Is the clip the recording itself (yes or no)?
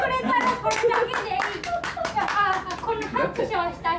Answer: yes